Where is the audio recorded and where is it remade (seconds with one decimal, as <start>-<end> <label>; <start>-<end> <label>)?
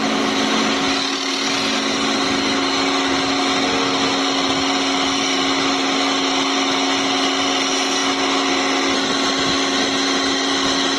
0.0-11.0 recorded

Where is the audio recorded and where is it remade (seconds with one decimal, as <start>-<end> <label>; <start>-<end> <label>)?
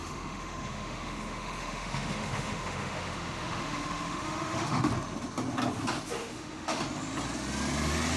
0.0-4.9 remade; 4.9-6.2 recorded; 6.2-6.8 remade; 6.8-8.2 recorded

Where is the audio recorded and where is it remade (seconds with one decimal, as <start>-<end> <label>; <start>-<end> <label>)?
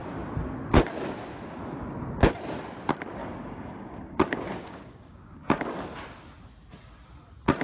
0.0-3.2 recorded; 3.2-5.6 remade; 5.6-7.6 recorded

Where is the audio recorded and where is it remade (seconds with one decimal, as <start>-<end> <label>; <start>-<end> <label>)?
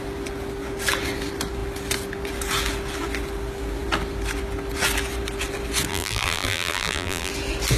0.0-5.9 recorded; 5.9-7.3 remade; 7.3-7.8 recorded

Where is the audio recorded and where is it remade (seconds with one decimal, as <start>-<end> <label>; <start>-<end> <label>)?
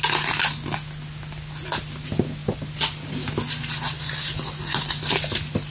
0.0-5.7 recorded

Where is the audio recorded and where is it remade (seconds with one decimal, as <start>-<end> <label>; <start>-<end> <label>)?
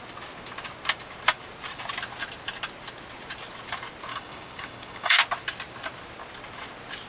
0.0-4.1 recorded; 4.1-5.2 remade; 5.2-7.1 recorded